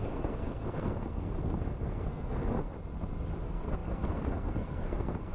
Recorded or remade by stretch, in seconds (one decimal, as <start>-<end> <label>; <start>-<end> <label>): 0.0-2.7 remade; 2.7-3.4 recorded; 3.4-5.3 remade